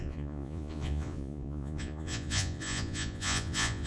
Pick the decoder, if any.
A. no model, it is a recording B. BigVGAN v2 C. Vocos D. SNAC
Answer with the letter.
C